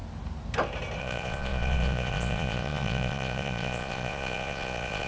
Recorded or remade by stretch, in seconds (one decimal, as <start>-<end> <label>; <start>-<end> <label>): 0.0-1.0 recorded; 1.0-5.1 remade